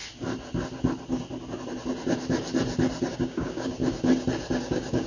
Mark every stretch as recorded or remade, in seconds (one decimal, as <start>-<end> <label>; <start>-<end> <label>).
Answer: 0.0-3.1 recorded; 3.1-3.8 remade; 3.8-4.6 recorded; 4.6-5.1 remade